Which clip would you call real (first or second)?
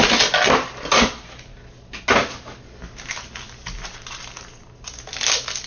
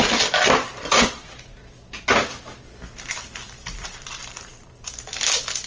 first